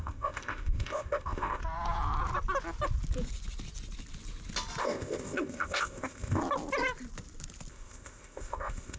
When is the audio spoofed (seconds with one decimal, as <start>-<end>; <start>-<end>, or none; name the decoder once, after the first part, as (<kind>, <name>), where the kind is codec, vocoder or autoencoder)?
0.0-1.6 (codec, ZipCodec); 4.8-6.4; 7.7-9.0